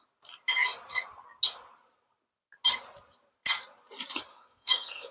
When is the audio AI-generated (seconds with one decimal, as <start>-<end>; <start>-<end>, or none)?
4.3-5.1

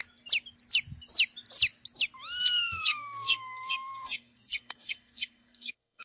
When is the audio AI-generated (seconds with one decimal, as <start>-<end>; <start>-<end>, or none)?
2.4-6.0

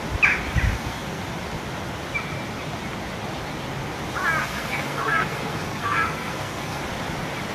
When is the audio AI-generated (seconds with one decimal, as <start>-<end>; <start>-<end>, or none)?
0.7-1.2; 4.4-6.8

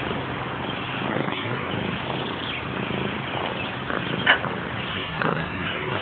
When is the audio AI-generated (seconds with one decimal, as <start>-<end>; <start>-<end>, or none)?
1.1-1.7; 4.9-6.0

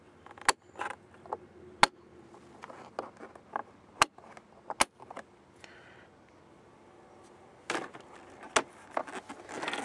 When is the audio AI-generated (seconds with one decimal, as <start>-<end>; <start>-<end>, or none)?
none

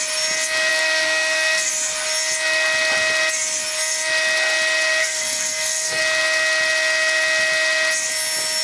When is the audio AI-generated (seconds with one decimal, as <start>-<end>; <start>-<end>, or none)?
0.7-1.7; 5.0-6.0

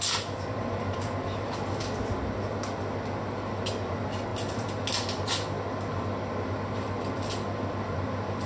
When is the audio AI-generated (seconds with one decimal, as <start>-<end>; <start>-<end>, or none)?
none

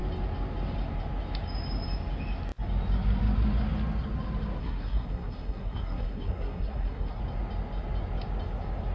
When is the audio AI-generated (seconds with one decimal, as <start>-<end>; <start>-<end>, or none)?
4.6-7.2